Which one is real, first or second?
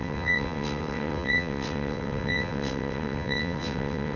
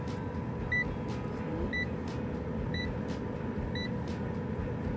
second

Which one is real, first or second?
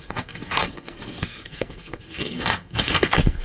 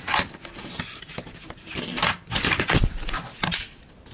second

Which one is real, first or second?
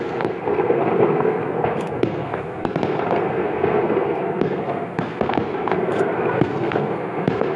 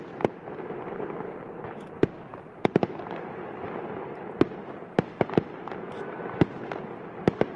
second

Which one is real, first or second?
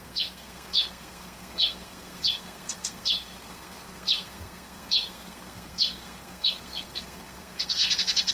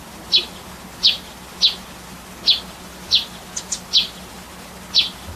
second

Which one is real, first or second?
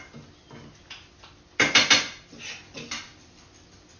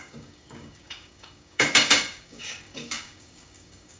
first